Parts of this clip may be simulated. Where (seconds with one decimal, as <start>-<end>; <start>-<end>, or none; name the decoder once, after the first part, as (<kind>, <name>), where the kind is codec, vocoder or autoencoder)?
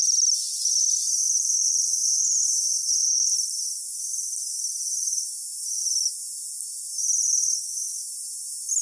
none